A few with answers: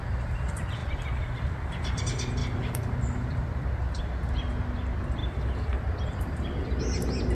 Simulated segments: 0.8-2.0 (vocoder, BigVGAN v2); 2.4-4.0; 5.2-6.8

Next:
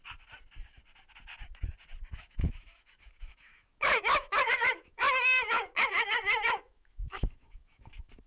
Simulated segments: 2.1-8.3 (autoencoder, DAC-VAE)

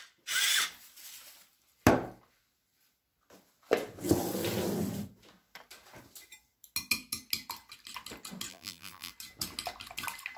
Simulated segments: 8.5-9.1 (vocoder, BigVGAN v2)

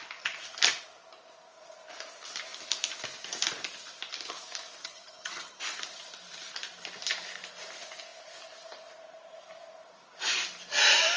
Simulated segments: 4.8-5.6 (vocoder, HiFi-GAN)